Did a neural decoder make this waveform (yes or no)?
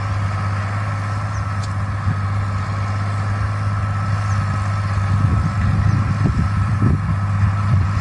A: no